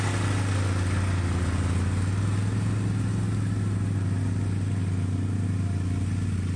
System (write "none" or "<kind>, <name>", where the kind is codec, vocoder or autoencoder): none